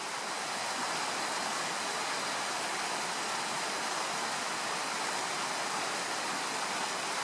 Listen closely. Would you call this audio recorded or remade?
recorded